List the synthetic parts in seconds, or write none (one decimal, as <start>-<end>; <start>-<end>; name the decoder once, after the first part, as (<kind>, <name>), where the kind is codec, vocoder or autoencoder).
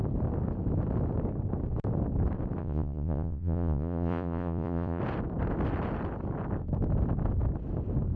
2.6-5.0 (vocoder, Vocos)